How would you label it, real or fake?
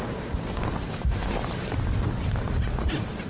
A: real